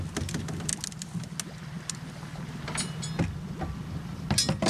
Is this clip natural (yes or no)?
yes